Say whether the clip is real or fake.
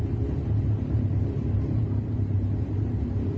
fake